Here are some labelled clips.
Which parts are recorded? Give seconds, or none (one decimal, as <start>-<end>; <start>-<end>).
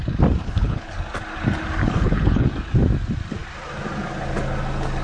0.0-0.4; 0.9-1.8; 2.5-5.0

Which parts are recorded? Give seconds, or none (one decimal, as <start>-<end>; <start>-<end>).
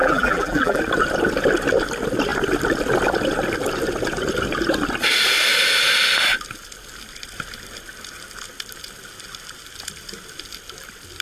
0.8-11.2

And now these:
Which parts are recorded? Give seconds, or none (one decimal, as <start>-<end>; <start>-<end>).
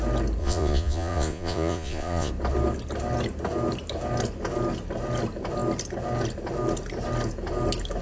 0.0-0.4; 2.3-8.0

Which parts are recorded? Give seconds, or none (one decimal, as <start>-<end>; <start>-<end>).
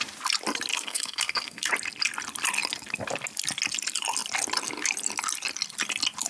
0.0-0.7; 1.7-6.3